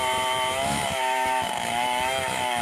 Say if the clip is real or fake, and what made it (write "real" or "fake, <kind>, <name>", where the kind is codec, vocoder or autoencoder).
fake, autoencoder, DAC-VAE